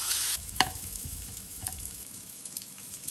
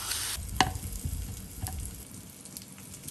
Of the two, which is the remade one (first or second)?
first